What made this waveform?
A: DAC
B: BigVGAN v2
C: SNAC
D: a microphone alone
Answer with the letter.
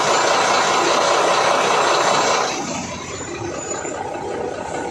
D